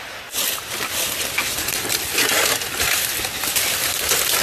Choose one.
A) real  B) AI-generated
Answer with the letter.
A